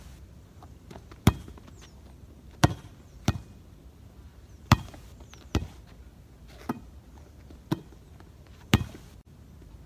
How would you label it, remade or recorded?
recorded